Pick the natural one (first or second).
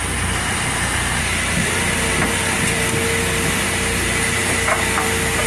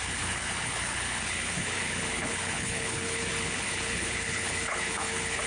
first